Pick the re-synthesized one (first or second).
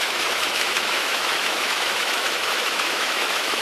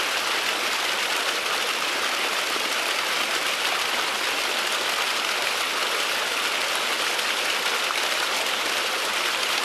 first